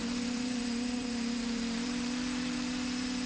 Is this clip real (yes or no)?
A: no